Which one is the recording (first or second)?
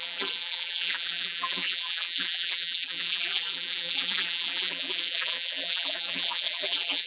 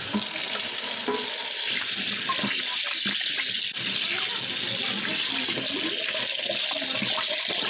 second